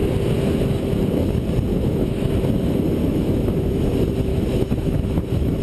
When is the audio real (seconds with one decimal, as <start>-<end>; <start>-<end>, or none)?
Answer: 0.0-1.7; 2.3-3.0; 3.9-4.3